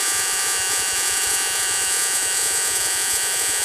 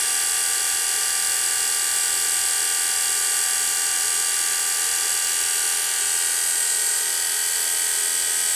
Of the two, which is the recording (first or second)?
second